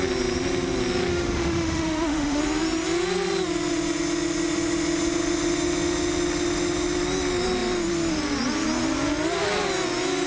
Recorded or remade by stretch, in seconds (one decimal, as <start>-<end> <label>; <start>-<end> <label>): 0.0-1.1 recorded; 1.1-2.4 remade; 2.4-10.3 recorded